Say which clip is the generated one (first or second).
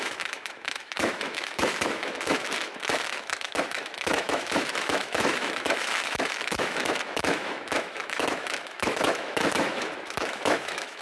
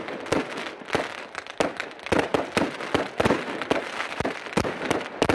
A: first